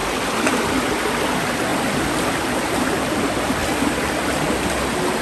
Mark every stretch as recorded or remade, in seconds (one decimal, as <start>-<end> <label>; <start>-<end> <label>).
0.0-0.6 remade; 0.6-1.7 recorded; 1.7-2.3 remade; 2.3-5.2 recorded